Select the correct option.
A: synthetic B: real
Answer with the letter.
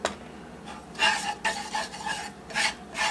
B